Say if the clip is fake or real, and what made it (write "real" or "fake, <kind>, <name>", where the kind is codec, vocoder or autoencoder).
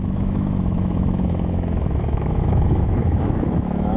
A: fake, autoencoder, DAC-VAE